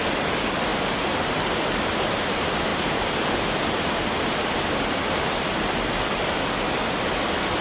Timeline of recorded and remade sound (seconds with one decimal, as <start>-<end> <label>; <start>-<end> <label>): 0.0-7.6 recorded